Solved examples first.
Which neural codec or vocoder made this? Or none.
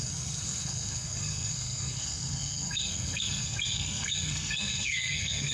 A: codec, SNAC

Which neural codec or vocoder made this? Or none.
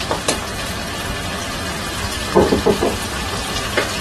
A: none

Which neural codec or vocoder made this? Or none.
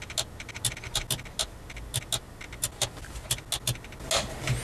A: none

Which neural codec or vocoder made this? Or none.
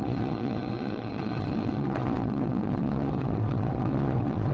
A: vocoder, WaveNeXt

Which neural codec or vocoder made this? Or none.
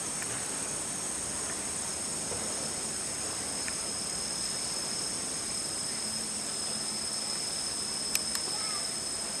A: none